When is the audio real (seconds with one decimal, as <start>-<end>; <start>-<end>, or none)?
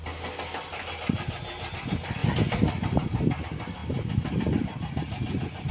0.0-2.2; 3.4-3.8; 4.5-5.7